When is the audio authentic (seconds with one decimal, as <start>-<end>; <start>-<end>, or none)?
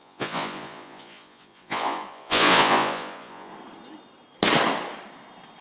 3.5-5.6